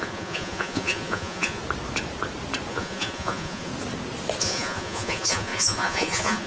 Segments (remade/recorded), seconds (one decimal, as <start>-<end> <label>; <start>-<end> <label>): 0.0-1.6 remade; 1.6-2.7 recorded; 2.7-3.7 remade; 3.7-4.4 recorded; 4.4-6.5 remade